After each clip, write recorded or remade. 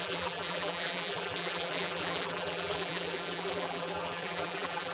remade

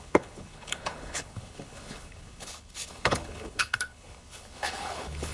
remade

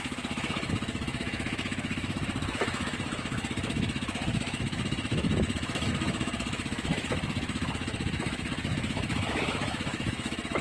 remade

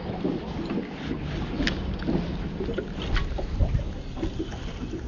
recorded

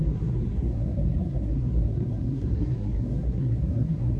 remade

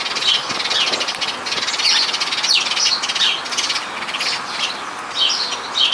recorded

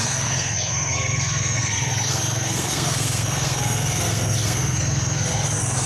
remade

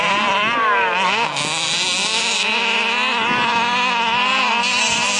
recorded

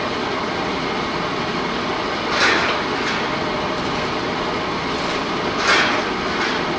remade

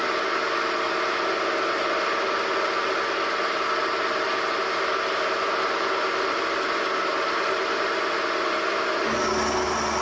recorded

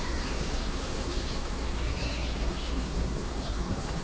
remade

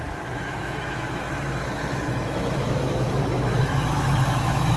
remade